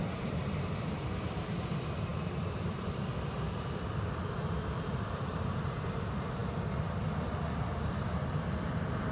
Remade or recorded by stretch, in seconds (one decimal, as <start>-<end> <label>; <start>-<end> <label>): 0.0-9.1 remade